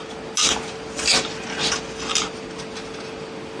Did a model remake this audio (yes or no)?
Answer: no